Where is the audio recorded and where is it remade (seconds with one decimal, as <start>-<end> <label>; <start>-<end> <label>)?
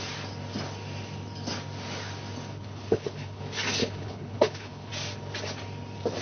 0.0-2.5 recorded; 2.5-3.4 remade; 3.4-3.8 recorded; 3.8-4.9 remade; 4.9-6.2 recorded